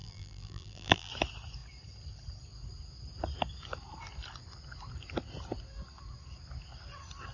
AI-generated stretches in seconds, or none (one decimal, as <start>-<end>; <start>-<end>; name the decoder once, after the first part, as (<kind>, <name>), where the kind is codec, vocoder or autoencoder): 0.0-1.1 (vocoder, BigVGAN v2)